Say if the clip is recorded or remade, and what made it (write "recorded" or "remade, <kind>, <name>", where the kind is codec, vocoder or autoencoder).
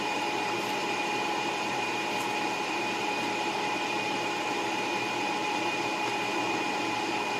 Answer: remade, vocoder, BigVGAN v2